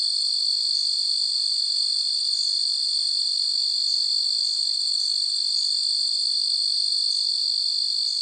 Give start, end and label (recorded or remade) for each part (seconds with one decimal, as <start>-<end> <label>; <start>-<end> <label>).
0.0-8.2 recorded